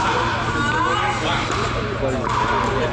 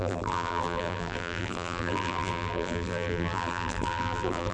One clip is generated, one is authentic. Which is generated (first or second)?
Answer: second